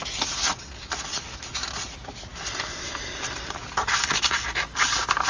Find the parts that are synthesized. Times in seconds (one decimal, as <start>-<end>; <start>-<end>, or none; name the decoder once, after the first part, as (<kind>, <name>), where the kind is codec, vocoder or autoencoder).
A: none

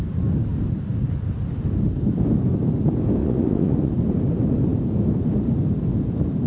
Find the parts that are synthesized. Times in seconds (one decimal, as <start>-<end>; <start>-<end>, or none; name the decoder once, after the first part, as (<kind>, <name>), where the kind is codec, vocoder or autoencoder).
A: 3.2-3.9 (vocoder, Vocos)

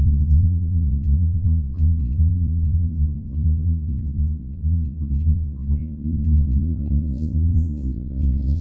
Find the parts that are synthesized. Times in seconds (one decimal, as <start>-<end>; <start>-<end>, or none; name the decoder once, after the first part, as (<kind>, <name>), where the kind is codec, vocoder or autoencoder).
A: 0.0-8.6 (vocoder, Vocos)

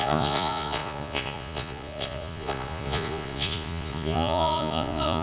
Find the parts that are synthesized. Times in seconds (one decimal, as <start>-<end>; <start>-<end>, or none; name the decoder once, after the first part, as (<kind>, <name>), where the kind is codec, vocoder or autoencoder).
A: 0.0-5.2 (vocoder, Vocos)

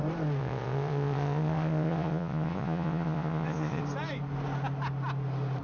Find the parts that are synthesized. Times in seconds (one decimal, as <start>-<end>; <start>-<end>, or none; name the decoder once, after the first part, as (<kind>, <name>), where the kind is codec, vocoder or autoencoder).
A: 0.4-3.8 (vocoder, Vocos)

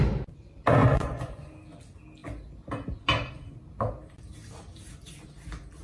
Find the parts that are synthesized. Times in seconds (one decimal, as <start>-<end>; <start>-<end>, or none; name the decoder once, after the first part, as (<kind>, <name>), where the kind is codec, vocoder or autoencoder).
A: 0.8-1.5 (vocoder, Vocos)